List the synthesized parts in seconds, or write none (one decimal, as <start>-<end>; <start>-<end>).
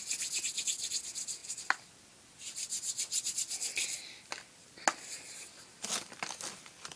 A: none